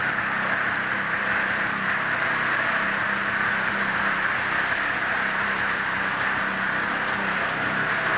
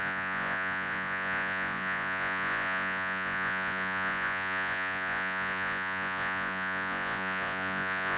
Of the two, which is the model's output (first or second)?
second